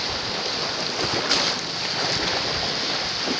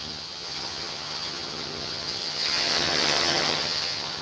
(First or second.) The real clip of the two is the first